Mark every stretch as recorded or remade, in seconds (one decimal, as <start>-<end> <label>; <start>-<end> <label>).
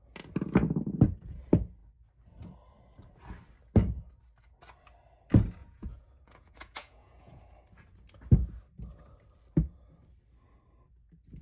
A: 0.0-5.6 recorded; 5.6-7.4 remade; 7.4-11.4 recorded